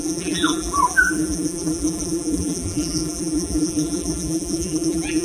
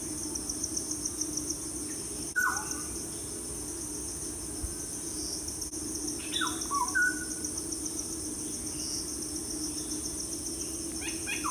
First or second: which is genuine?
second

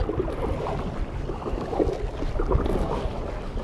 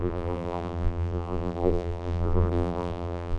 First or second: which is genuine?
first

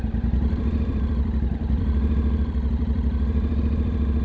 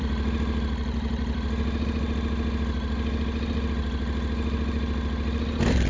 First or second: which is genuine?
second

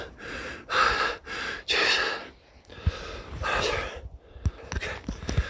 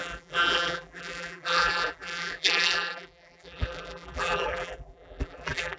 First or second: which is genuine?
first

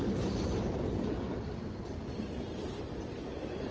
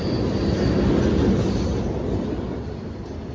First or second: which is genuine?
second